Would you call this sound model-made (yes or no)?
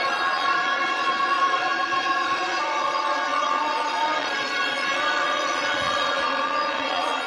yes